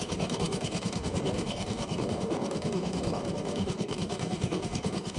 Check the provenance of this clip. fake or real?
fake